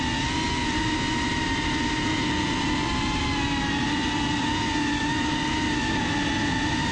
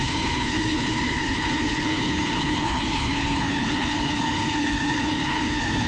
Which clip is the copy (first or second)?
second